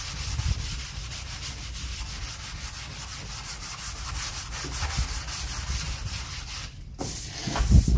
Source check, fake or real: real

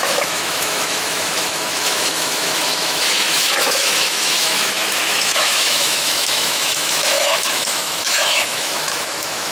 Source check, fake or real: fake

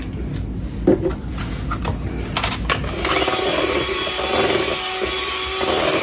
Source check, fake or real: real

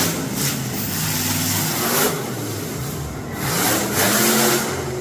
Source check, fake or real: real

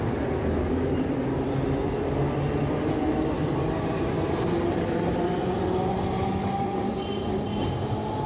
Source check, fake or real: real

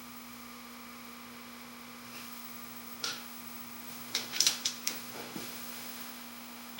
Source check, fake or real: fake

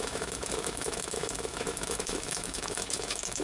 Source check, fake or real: fake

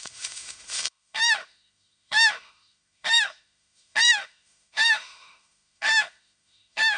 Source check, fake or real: fake